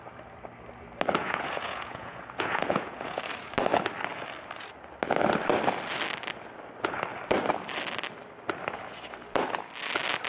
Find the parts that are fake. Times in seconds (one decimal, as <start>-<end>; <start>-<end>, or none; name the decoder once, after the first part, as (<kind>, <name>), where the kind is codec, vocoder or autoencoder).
1.2-3.2 (vocoder, Vocos)